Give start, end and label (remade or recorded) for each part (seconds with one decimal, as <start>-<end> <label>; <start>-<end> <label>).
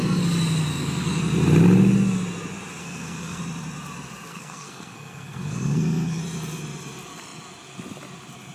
0.0-0.7 recorded; 0.7-1.2 remade; 1.2-2.8 recorded; 2.8-3.4 remade; 3.4-4.3 recorded; 4.3-6.2 remade; 6.2-8.5 recorded